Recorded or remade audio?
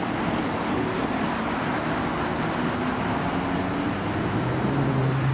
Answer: recorded